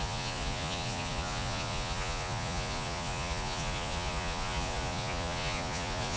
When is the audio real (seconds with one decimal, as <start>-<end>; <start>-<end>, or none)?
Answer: none

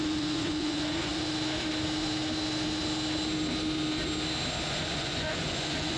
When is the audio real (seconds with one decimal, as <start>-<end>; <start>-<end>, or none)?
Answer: 1.1-4.7